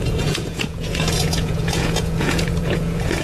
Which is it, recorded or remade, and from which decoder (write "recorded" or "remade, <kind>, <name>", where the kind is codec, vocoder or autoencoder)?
remade, vocoder, Vocos